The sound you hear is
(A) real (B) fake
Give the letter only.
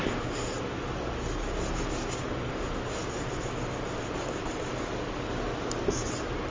A